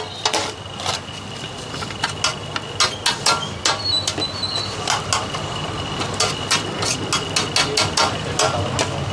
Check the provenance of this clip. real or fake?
real